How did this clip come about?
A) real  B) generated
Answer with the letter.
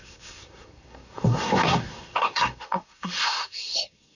B